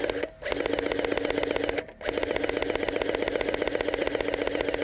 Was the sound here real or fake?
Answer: real